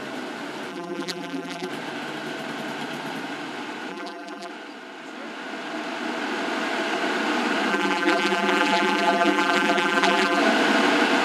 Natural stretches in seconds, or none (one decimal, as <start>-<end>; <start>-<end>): 0.0-0.7; 1.7-3.9; 4.5-7.7; 10.4-11.2